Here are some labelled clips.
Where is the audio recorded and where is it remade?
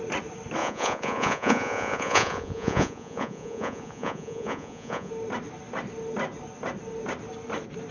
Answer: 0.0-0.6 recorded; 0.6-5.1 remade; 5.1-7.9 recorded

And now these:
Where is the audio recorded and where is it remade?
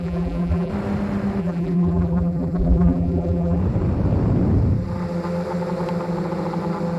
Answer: 0.0-0.7 remade; 0.7-1.4 recorded; 1.4-3.6 remade; 3.6-7.0 recorded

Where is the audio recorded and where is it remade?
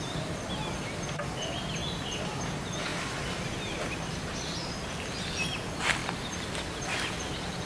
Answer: 0.0-7.7 recorded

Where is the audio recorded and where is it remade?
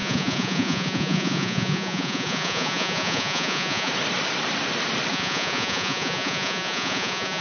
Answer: 0.0-3.9 remade; 3.9-5.1 recorded; 5.1-7.4 remade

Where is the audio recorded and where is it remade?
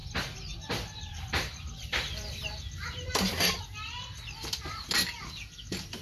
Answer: 0.0-3.6 remade; 3.6-6.0 recorded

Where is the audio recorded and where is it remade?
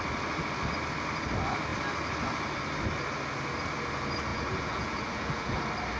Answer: 0.0-4.3 recorded; 4.3-5.6 remade; 5.6-6.0 recorded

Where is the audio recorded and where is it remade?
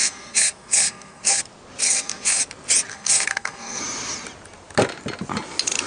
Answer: 0.0-1.4 remade; 1.4-1.8 recorded; 1.8-2.4 remade; 2.4-2.9 recorded; 2.9-3.8 remade; 3.8-5.9 recorded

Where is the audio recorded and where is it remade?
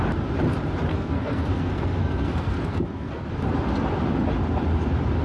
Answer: 0.0-0.9 recorded; 0.9-3.3 remade; 3.3-5.2 recorded